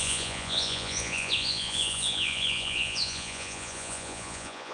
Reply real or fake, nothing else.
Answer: fake